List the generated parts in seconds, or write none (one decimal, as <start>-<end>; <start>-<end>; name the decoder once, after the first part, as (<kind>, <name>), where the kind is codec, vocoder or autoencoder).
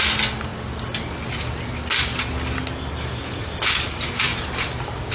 none